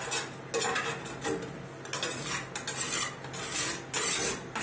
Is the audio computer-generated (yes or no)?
no